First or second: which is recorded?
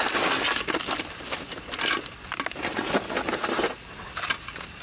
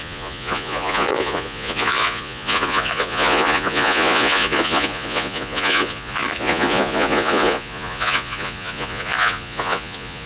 first